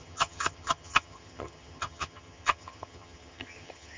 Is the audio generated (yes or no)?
yes